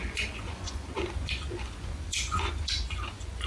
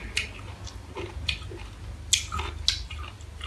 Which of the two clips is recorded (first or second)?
second